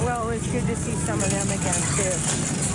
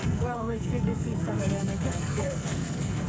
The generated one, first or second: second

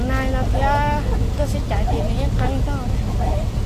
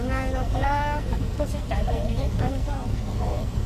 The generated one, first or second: second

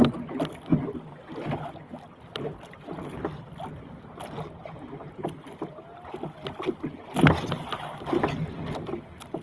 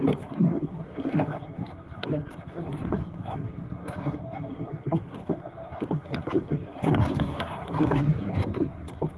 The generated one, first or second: second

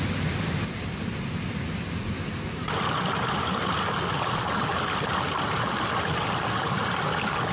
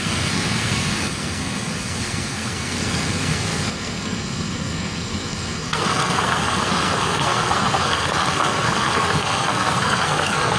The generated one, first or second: second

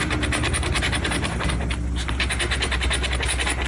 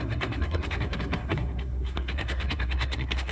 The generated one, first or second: second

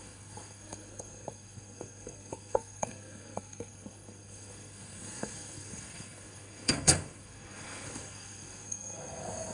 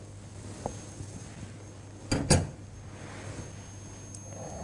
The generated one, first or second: first